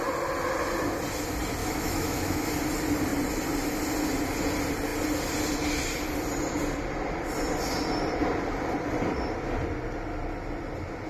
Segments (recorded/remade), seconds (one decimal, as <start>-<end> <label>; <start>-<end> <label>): 0.0-1.6 recorded; 1.6-2.5 remade; 2.5-11.1 recorded